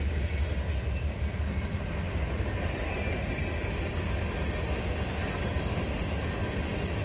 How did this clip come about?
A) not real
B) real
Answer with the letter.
B